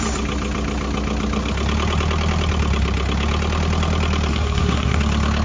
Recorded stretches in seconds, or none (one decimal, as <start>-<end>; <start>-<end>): 0.0-4.3; 5.0-5.4

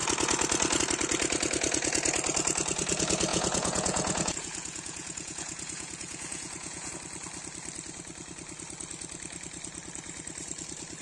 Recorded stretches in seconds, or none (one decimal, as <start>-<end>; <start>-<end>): 0.0-3.3; 6.9-11.0

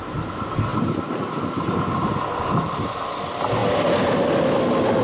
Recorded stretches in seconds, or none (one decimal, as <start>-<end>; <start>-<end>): 0.0-5.0